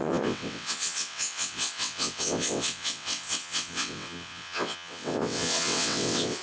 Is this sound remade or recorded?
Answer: remade